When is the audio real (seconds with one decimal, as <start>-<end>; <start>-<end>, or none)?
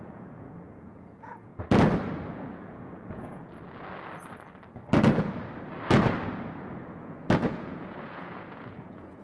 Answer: 1.5-2.3; 3.4-7.0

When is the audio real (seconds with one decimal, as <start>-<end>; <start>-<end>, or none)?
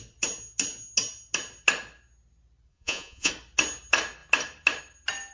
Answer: 0.0-2.7; 3.3-5.3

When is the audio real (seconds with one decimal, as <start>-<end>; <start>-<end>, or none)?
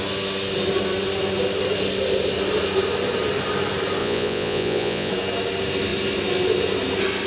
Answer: 0.0-4.0; 5.1-7.3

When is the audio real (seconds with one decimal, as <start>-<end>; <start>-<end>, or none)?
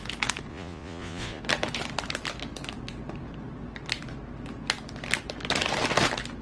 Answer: 0.0-0.5; 1.4-6.4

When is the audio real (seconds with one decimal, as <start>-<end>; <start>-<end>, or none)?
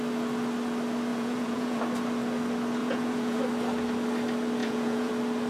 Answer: 0.0-1.1; 1.8-2.8; 3.4-4.6; 5.1-5.5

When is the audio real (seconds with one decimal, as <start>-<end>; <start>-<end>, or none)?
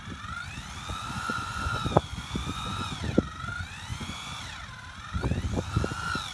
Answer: 0.0-1.0; 3.0-3.9; 4.4-6.3